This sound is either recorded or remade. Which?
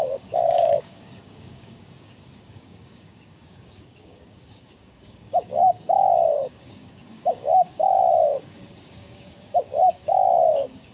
remade